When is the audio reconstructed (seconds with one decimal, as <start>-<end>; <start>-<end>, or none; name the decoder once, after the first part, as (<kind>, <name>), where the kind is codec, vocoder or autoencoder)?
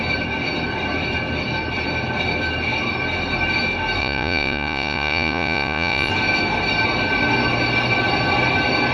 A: 4.0-6.1 (vocoder, Vocos)